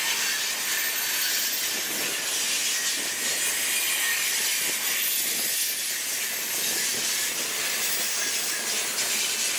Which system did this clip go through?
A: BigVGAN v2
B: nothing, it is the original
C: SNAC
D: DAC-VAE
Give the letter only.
B